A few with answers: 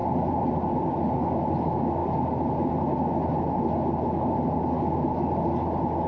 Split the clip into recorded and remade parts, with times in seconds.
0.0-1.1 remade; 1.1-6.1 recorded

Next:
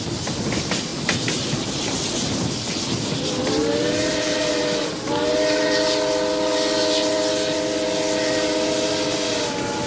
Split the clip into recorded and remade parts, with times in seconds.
0.0-9.9 recorded

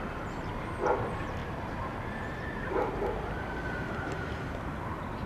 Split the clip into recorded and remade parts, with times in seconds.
0.0-1.4 recorded; 1.4-2.7 remade; 2.7-5.3 recorded

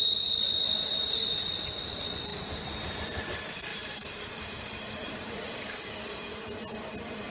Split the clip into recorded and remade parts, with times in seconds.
0.0-1.0 recorded; 1.0-1.5 remade; 1.5-2.3 recorded; 2.3-3.2 remade; 3.2-3.7 recorded; 3.7-5.9 remade; 5.9-7.3 recorded

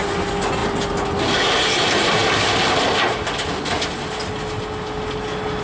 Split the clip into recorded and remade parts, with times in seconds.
0.0-5.6 recorded

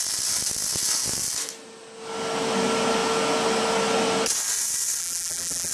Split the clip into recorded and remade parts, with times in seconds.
0.0-5.0 recorded; 5.0-5.7 remade

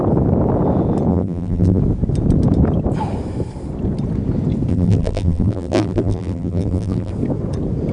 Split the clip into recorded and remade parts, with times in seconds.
0.0-1.1 recorded; 1.1-1.8 remade; 1.8-4.7 recorded; 4.7-7.1 remade; 7.1-7.9 recorded